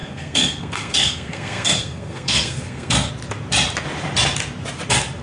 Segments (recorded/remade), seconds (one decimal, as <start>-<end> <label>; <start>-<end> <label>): 0.0-3.1 remade; 3.1-5.2 recorded